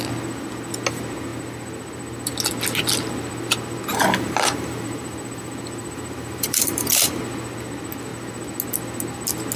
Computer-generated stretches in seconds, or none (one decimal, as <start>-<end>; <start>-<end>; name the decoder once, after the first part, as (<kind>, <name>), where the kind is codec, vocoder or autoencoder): 3.9-7.2 (vocoder, BigVGAN v2)